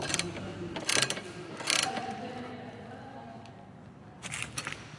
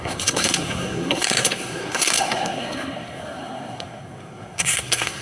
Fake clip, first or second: second